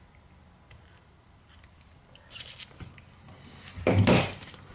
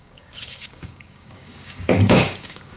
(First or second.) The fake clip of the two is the second